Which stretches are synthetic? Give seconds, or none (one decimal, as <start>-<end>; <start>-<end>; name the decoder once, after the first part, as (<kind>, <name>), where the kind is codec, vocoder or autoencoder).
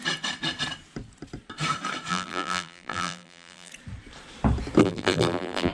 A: 2.1-3.7 (vocoder, BigVGAN v2); 4.8-5.7